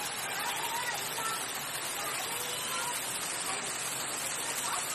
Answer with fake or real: real